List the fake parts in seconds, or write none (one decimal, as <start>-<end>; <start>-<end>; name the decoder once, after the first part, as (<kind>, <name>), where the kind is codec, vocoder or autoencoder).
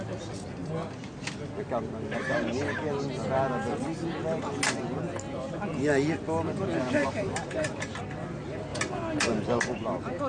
7.0-7.8 (vocoder, BigVGAN v2)